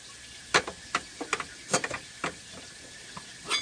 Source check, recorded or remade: recorded